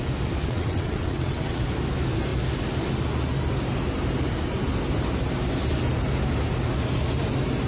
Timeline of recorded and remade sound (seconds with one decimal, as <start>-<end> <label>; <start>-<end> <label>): 0.0-0.4 recorded; 0.4-1.6 remade; 1.6-7.7 recorded